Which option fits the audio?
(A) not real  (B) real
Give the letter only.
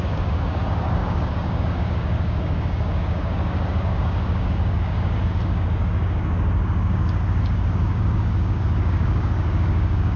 A